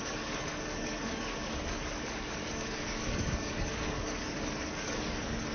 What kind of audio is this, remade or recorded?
remade